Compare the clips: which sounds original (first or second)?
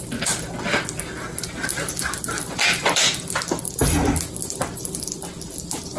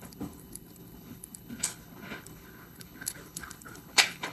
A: first